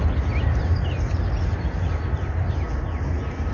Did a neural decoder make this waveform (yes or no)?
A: no